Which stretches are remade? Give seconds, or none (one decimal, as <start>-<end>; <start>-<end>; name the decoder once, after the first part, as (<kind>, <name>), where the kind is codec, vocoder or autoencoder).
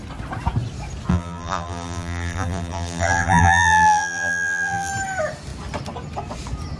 1.1-4.9 (vocoder, BigVGAN v2)